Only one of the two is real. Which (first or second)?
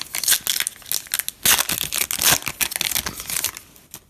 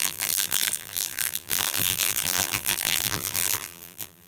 first